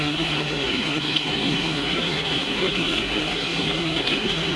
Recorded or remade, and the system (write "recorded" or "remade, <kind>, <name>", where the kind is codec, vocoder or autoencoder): remade, codec, SNAC